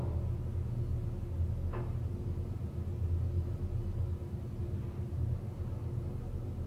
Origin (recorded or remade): recorded